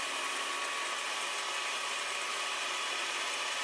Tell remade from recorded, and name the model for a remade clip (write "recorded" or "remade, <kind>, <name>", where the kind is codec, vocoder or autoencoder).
recorded